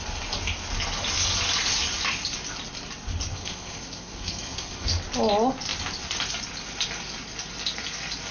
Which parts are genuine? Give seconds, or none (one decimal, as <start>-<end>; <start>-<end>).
0.0-3.3; 4.9-8.3